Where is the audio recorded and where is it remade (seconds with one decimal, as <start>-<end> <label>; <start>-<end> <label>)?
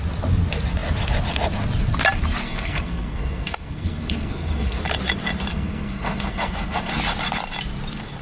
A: 0.0-2.4 recorded; 2.4-4.8 remade; 4.8-5.5 recorded; 5.5-6.9 remade; 6.9-8.2 recorded